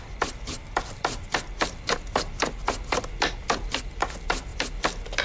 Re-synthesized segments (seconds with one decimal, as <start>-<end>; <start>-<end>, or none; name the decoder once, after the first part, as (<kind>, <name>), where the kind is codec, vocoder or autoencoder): 0.0-4.5 (vocoder, BigVGAN v2)